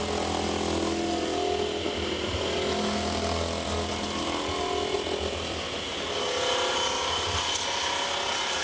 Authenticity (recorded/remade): recorded